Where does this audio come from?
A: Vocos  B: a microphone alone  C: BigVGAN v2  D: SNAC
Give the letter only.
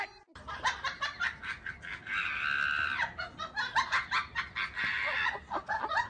B